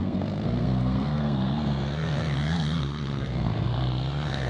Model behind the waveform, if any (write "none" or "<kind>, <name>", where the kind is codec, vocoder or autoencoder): codec, SNAC